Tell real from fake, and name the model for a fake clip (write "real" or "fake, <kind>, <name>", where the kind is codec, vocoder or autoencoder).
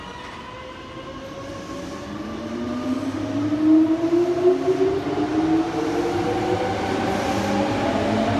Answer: real